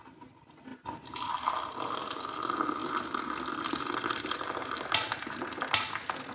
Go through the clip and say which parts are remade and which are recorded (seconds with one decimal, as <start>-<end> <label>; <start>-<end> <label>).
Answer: 0.0-0.7 recorded; 0.7-1.3 remade; 1.3-2.8 recorded; 2.8-5.4 remade; 5.4-6.3 recorded